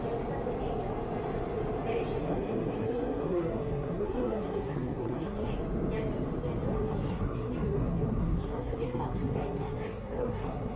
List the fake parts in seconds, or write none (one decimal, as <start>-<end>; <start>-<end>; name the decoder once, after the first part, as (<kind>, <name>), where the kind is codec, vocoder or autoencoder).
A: 2.2-5.5 (codec, SNAC); 6.7-10.8